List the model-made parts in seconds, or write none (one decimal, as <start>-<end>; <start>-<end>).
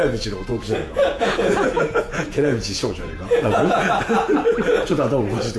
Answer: 0.5-3.9